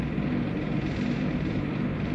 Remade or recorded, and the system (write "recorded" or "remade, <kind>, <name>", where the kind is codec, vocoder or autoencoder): remade, vocoder, BigVGAN v2